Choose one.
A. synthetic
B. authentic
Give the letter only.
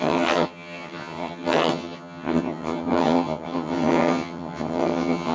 A